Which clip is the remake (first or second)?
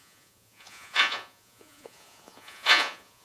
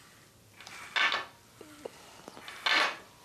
first